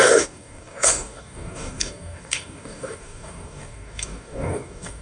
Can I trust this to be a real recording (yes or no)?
no